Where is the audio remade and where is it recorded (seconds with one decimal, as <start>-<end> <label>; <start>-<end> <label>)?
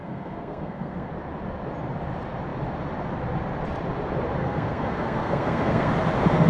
0.0-1.1 remade; 1.1-4.4 recorded; 4.4-5.9 remade; 5.9-6.5 recorded